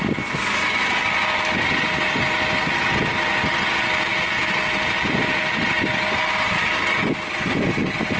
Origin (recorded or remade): recorded